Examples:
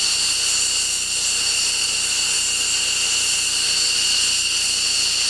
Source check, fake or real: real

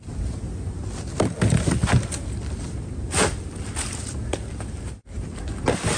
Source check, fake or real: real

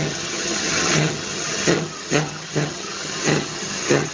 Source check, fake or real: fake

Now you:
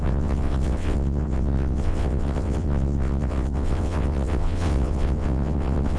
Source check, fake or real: fake